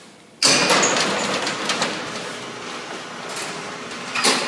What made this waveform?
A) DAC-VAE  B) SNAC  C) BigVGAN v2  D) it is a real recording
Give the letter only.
D